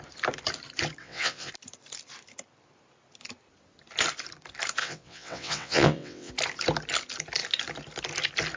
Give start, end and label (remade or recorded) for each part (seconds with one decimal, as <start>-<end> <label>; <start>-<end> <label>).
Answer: 0.0-1.0 recorded; 1.0-1.5 remade; 1.5-4.8 recorded; 4.8-6.3 remade; 6.3-8.6 recorded